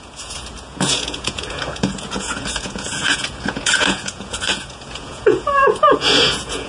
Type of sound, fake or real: fake